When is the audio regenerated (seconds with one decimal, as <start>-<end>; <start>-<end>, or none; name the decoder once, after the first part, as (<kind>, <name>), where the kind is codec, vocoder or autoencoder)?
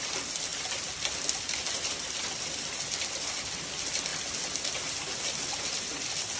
none